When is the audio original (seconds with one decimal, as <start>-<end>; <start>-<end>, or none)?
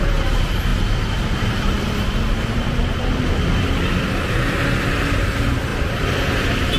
0.0-0.7; 4.3-5.7; 6.2-6.8